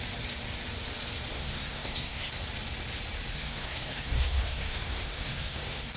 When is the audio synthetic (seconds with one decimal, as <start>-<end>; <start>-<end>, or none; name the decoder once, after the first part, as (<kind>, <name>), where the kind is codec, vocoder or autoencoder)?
1.3-2.3 (codec, SNAC); 3.3-6.0